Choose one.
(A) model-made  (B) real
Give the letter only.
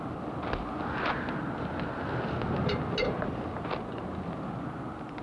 B